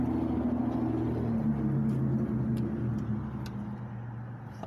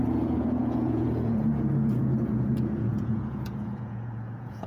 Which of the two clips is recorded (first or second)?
first